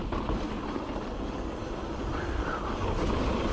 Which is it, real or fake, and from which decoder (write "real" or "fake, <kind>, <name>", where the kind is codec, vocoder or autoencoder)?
real